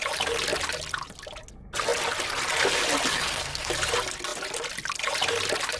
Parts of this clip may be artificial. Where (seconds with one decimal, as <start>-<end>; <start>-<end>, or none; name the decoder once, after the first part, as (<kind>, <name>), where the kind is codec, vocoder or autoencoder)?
3.1-3.7 (codec, SNAC)